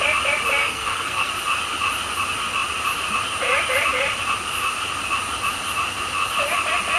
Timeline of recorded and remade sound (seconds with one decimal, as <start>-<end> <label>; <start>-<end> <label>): 0.0-0.6 recorded; 0.6-1.3 remade; 1.3-7.0 recorded